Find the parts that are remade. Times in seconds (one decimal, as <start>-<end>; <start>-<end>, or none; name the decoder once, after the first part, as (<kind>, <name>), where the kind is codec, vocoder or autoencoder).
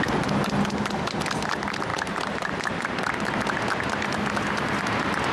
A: 1.9-2.8 (vocoder, BigVGAN v2)